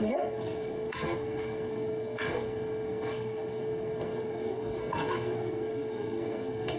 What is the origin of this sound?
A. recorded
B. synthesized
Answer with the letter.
B